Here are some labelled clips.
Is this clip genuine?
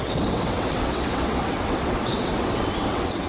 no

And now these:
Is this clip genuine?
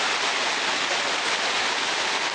yes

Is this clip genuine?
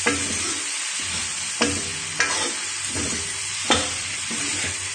yes